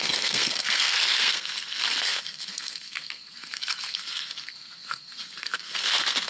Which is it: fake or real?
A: fake